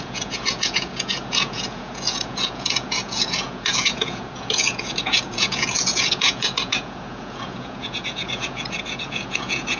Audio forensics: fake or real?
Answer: fake